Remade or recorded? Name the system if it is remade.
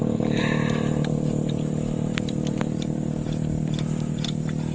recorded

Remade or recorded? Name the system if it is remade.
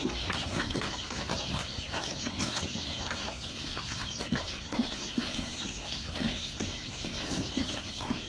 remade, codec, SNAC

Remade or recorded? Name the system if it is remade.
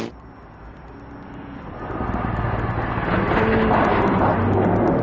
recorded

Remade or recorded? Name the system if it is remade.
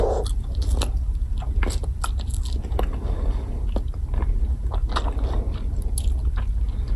recorded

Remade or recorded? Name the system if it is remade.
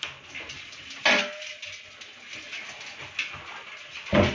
recorded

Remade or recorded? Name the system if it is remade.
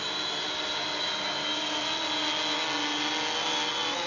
recorded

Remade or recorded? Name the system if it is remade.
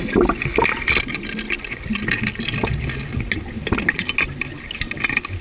recorded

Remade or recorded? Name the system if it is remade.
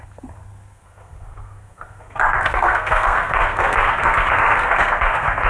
remade, codec, SNAC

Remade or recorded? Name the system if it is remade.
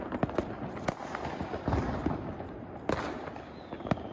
recorded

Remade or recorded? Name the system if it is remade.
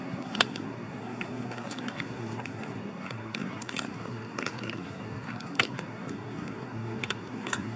remade, codec, SNAC